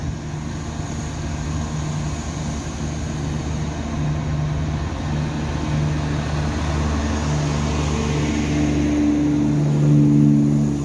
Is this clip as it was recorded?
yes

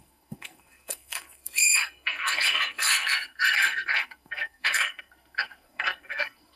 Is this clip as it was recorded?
no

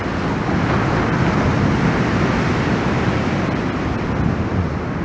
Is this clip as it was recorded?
yes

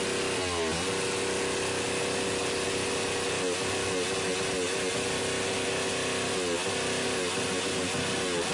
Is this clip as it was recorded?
yes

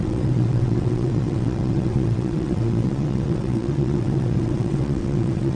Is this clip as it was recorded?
no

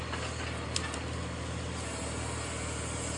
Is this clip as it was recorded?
yes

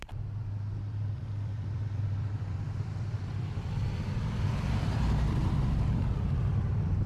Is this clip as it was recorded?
no